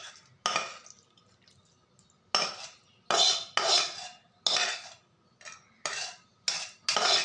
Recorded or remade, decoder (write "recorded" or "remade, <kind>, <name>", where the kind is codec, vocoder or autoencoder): recorded